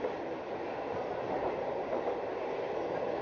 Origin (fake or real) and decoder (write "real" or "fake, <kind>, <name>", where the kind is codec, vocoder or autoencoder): real